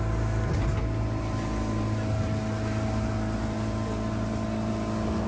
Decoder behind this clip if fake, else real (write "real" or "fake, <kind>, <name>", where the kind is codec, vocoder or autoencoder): real